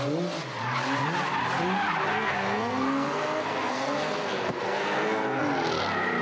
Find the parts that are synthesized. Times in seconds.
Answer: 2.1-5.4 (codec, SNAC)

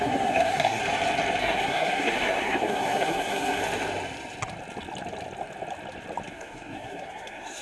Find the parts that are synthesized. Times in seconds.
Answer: 0.0-0.8 (codec, SNAC); 1.4-3.6; 6.3-7.6

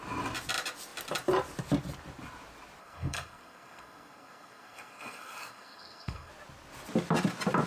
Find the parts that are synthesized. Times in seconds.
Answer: 2.8-6.3 (codec, SNAC)

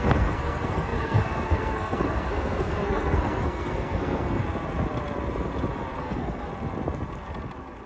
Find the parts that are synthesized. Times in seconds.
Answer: 0.0-4.4 (codec, SNAC); 6.0-6.5